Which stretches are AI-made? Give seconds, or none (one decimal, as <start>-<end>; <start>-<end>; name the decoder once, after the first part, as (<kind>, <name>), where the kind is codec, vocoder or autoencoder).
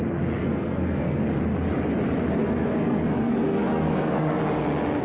0.4-1.2 (codec, SNAC); 2.4-4.4